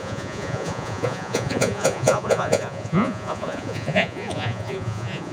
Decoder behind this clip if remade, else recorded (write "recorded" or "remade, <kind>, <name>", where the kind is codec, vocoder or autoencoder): remade, vocoder, Vocos